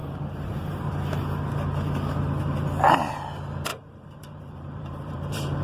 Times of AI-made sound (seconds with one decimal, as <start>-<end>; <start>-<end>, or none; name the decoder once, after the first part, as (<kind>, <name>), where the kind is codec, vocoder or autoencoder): 0.0-0.9 (vocoder, BigVGAN v2); 3.7-5.6